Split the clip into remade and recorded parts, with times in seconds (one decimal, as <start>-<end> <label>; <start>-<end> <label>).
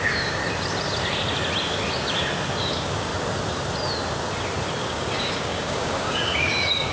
0.0-0.4 remade; 0.4-2.6 recorded; 2.6-3.1 remade; 3.1-4.8 recorded; 4.8-6.9 remade